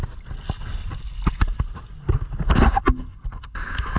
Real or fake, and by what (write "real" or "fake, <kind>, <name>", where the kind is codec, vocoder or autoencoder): real